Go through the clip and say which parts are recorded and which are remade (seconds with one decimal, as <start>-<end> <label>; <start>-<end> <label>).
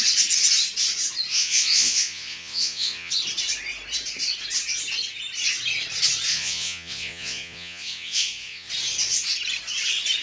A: 0.0-1.3 recorded; 1.3-3.1 remade; 3.1-6.3 recorded; 6.3-8.7 remade; 8.7-10.2 recorded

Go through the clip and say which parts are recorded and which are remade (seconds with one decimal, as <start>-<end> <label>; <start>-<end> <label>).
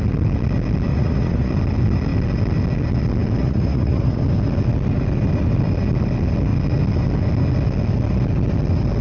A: 0.0-0.9 recorded; 0.9-1.5 remade; 1.5-3.4 recorded; 3.4-4.2 remade; 4.2-9.0 recorded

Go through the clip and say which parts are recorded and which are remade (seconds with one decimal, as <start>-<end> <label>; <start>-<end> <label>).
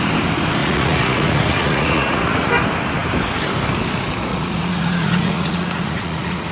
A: 0.0-0.6 recorded; 0.6-2.5 remade; 2.5-4.3 recorded; 4.3-6.5 remade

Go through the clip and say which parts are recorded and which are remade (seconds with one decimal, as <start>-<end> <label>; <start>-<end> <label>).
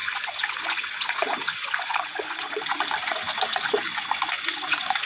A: 0.0-5.1 remade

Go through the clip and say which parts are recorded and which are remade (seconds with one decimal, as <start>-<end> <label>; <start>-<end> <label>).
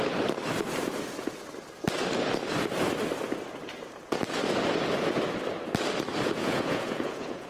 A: 0.0-6.4 recorded; 6.4-7.5 remade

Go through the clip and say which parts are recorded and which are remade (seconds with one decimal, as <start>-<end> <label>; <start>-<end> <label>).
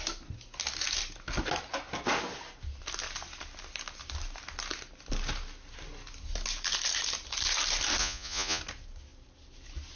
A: 0.0-8.0 recorded; 8.0-8.6 remade; 8.6-10.0 recorded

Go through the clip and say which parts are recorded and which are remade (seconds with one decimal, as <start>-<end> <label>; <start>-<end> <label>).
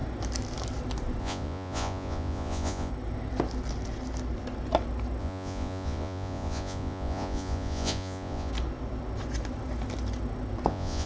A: 0.0-1.2 recorded; 1.2-2.9 remade; 2.9-5.2 recorded; 5.2-8.5 remade; 8.5-10.7 recorded; 10.7-11.1 remade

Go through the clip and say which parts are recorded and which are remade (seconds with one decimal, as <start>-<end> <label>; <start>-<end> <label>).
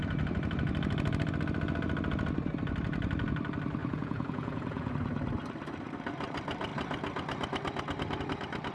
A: 0.0-3.8 recorded; 3.8-4.9 remade; 4.9-8.7 recorded